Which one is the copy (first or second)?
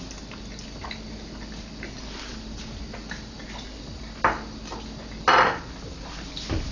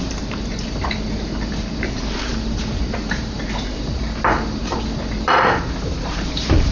second